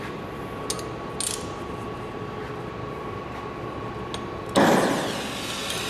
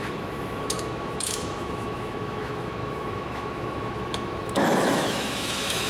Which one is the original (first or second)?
first